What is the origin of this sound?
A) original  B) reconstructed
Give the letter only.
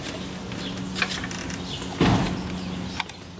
A